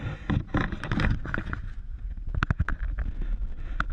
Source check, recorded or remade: recorded